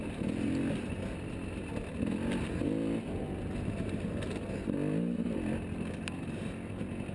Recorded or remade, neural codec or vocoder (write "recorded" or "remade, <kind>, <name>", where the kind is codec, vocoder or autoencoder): recorded